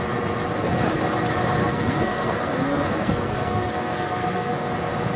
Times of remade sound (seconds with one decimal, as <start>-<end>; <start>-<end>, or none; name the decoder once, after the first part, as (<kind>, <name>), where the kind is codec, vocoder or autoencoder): 1.6-4.7 (codec, SNAC)